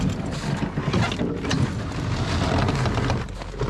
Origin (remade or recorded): recorded